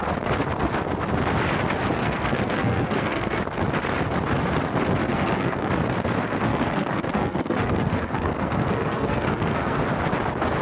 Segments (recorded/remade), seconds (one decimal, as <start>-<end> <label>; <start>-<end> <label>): 0.0-2.0 recorded; 2.0-3.4 remade; 3.4-5.1 recorded; 5.1-5.7 remade; 5.7-6.5 recorded; 6.5-9.8 remade; 9.8-10.6 recorded